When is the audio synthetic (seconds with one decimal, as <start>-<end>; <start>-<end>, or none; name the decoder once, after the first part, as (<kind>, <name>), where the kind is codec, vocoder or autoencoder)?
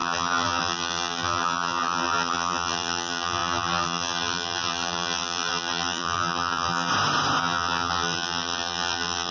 0.0-6.9 (vocoder, BigVGAN v2); 7.4-9.3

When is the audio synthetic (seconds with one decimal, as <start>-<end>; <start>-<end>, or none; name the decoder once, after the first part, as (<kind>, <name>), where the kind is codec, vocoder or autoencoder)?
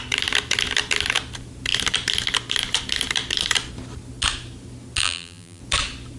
5.0-5.6 (vocoder, BigVGAN v2)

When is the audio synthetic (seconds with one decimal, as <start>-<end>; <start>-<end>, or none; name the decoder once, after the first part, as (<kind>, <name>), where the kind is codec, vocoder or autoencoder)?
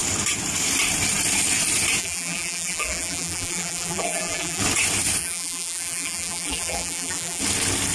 2.0-4.6 (vocoder, BigVGAN v2); 5.2-7.4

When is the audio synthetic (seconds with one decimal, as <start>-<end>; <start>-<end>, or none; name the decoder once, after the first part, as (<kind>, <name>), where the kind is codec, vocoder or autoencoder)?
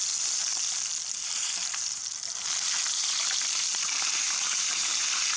1.1-2.0 (vocoder, BigVGAN v2); 2.7-5.4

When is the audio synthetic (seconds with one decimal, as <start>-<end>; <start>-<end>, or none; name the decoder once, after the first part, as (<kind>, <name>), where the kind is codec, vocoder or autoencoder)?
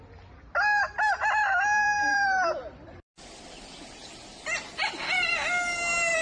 0.8-3.1 (vocoder, BigVGAN v2)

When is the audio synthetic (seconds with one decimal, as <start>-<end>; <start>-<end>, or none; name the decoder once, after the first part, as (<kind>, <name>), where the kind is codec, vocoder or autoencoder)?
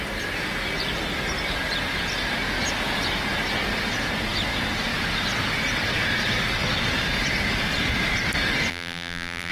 8.7-9.5 (vocoder, BigVGAN v2)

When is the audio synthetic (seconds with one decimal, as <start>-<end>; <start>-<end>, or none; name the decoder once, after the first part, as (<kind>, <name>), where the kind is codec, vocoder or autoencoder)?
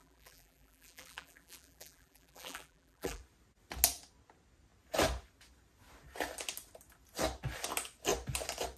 0.0-3.2 (vocoder, BigVGAN v2)